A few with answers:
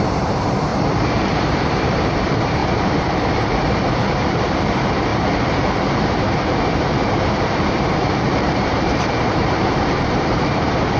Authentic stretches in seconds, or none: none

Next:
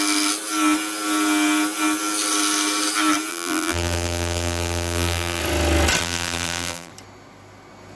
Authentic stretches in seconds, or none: 0.0-3.3; 5.4-6.0; 6.9-8.0

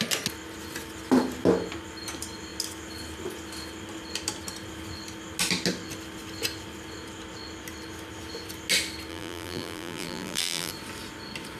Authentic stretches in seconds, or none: 0.0-9.1; 10.7-11.6

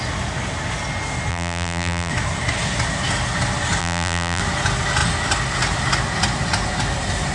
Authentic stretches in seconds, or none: 0.0-1.3; 2.1-3.8; 4.4-7.3

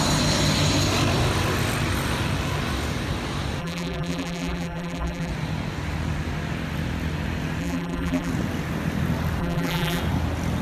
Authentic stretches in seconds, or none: 0.0-3.6; 5.3-7.6; 8.3-9.4; 10.0-10.6

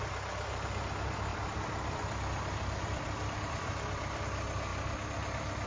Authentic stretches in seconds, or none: 0.0-1.3; 4.2-5.7

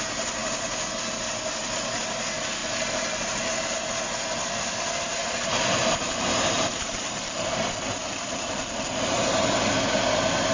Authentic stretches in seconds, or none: 0.0-2.6; 3.5-5.2; 9.7-10.5

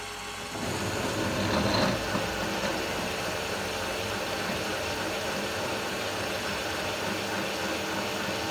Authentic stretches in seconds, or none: 0.0-2.7; 7.3-8.5